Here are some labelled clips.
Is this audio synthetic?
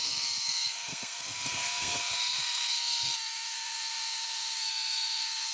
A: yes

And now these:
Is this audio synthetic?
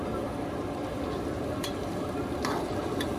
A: no